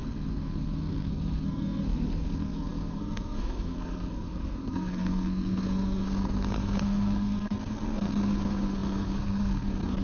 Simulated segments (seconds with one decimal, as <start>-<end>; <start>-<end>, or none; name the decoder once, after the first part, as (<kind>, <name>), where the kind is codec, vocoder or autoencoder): 0.0-10.0 (codec, SNAC)